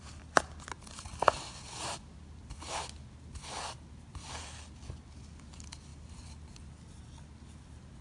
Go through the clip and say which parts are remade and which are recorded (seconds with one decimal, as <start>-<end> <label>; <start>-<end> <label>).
0.0-8.0 recorded